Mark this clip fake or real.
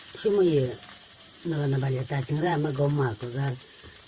fake